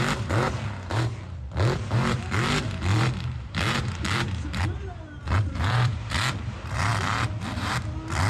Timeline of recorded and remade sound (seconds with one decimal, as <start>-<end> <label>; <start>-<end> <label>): 0.0-2.9 recorded; 2.9-6.1 remade; 6.1-8.3 recorded

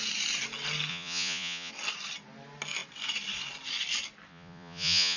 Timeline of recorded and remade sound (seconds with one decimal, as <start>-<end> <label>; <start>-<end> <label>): 0.0-0.9 recorded; 0.9-1.7 remade; 1.7-4.3 recorded; 4.3-5.2 remade

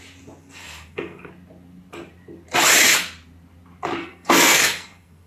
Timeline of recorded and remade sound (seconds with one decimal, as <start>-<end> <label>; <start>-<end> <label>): 0.0-0.4 recorded; 0.4-1.3 remade; 1.3-4.0 recorded; 4.0-5.3 remade

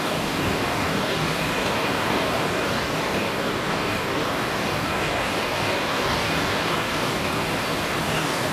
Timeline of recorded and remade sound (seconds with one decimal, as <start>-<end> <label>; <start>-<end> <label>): 0.0-7.4 remade; 7.4-8.0 recorded; 8.0-8.5 remade

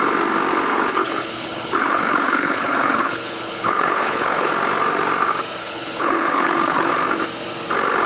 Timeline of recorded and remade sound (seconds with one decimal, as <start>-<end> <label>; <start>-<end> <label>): 0.0-0.7 recorded; 0.7-4.5 remade; 4.5-5.6 recorded; 5.6-6.9 remade; 6.9-8.1 recorded

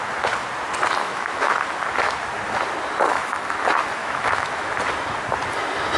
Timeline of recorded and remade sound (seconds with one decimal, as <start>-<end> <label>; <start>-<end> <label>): 0.0-1.0 recorded; 1.0-1.6 remade; 1.6-3.1 recorded; 3.1-3.6 remade; 3.6-4.0 recorded; 4.0-4.7 remade; 4.7-6.0 recorded